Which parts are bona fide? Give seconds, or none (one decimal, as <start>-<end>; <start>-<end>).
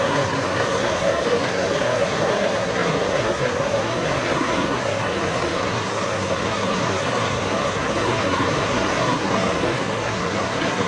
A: none